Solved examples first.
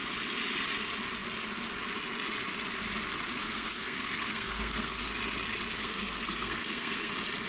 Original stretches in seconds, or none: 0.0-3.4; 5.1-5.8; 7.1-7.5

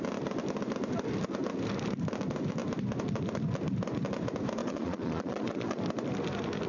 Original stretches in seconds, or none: 0.0-4.6; 5.8-6.7

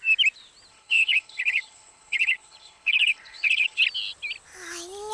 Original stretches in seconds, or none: 0.0-0.7; 3.8-5.1

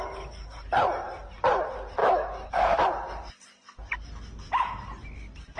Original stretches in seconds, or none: 0.0-2.0; 2.8-5.6

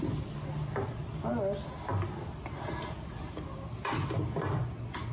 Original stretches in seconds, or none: 0.0-5.1